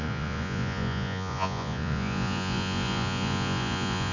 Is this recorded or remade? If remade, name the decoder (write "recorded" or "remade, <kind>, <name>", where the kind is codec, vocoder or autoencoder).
remade, vocoder, Vocos